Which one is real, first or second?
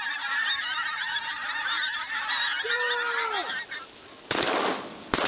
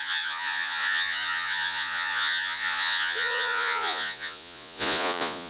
first